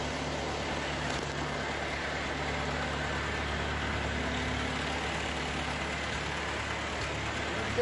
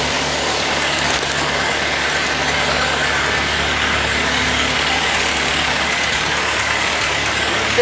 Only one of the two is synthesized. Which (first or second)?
second